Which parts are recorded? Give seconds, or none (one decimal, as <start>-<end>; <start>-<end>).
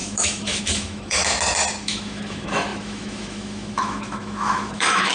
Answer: 1.2-1.8